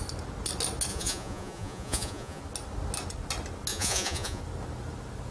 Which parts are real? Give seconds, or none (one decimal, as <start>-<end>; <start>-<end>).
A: 0.0-0.9; 2.4-3.7; 4.4-5.3